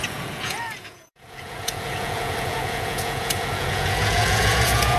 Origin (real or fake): fake